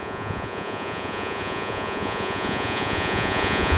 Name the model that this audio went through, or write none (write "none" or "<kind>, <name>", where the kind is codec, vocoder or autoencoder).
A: vocoder, Vocos